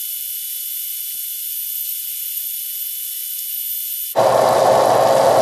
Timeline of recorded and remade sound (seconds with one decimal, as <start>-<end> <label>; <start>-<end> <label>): 0.0-1.9 recorded; 1.9-2.6 remade; 2.6-5.4 recorded

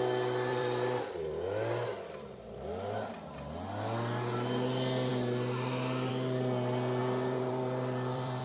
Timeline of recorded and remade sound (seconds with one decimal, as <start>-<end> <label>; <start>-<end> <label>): 0.0-0.5 recorded; 0.5-1.1 remade; 1.1-7.0 recorded; 7.0-8.4 remade

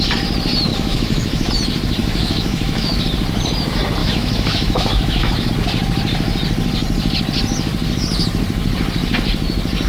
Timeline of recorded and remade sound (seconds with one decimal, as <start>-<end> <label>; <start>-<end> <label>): 0.0-0.7 recorded; 0.7-1.5 remade; 1.5-2.0 recorded; 2.0-3.0 remade; 3.0-4.0 recorded; 4.0-5.5 remade; 5.5-9.9 recorded